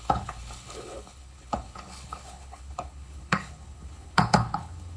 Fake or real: fake